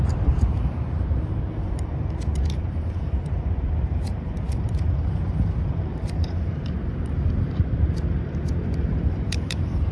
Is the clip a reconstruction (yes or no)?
yes